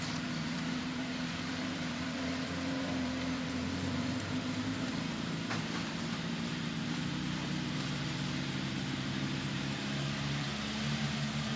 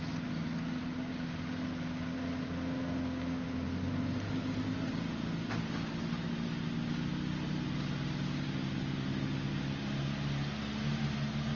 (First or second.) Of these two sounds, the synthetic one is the first